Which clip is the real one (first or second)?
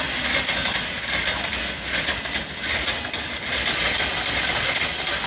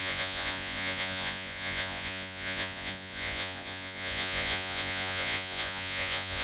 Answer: first